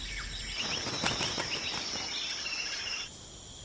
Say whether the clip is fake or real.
real